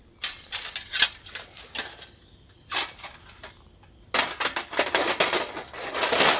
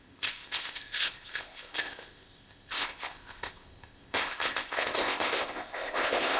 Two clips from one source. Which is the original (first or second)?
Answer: first